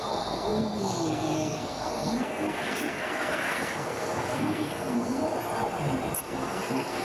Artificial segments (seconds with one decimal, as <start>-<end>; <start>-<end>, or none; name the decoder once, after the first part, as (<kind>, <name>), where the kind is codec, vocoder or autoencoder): 0.0-5.2 (codec, SNAC); 6.2-7.0